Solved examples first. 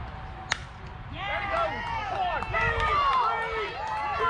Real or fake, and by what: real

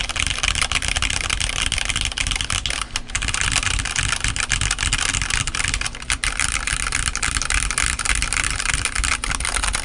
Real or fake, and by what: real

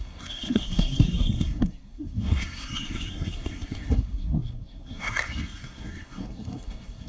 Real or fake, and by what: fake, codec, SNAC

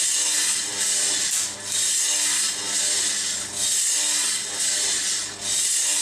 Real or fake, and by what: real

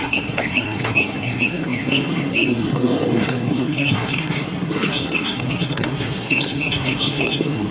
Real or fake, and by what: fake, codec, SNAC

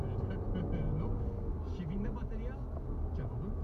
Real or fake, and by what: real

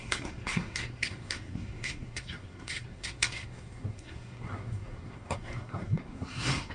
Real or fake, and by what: fake, codec, SNAC